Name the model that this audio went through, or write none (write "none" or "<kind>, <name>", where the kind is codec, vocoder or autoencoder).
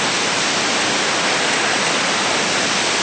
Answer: none